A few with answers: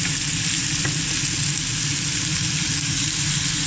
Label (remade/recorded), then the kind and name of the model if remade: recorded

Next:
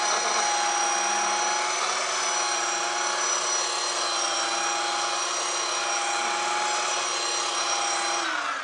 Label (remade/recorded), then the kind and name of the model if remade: recorded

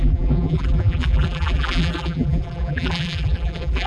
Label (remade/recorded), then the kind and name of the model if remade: remade, vocoder, BigVGAN v2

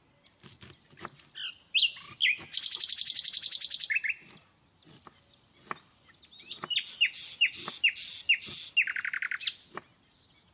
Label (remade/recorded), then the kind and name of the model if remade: recorded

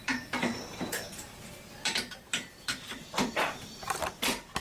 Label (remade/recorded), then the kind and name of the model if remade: remade, vocoder, BigVGAN v2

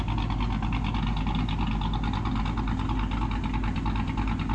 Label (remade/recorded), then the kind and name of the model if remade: recorded